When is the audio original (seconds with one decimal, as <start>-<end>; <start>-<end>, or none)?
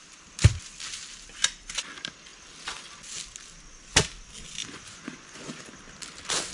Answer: 0.0-4.6; 5.6-6.5